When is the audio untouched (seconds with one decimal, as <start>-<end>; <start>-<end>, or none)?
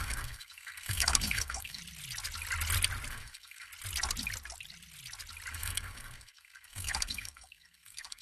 1.8-3.1; 3.7-5.5